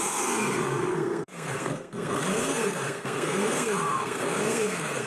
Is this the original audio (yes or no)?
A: no